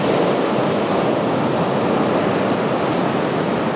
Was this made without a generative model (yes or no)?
yes